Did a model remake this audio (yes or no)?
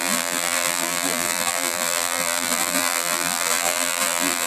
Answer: yes